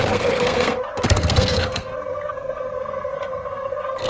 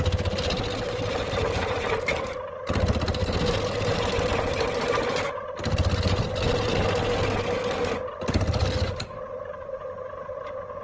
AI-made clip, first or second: first